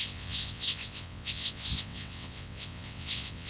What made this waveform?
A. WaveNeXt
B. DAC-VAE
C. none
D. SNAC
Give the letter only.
A